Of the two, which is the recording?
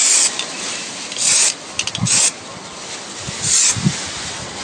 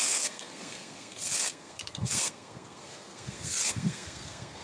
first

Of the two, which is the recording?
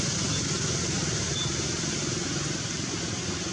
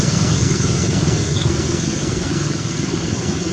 first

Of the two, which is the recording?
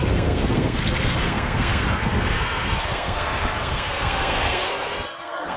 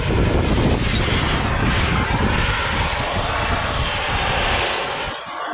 second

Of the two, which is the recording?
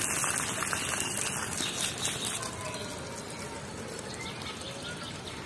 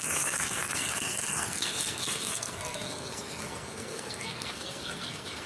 first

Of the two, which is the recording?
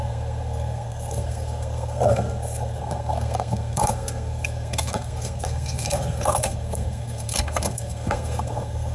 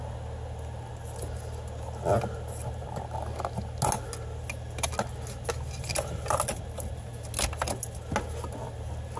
second